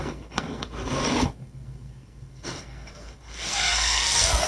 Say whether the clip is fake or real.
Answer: fake